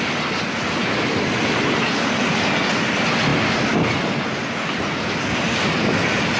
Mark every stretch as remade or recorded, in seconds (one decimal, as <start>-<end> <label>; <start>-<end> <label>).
0.0-6.4 recorded